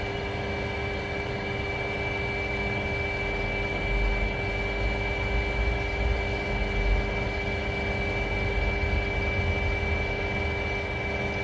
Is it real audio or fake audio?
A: real